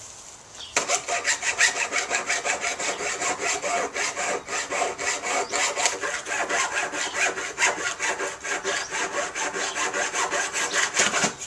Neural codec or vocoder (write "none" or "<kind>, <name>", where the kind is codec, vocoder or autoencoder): none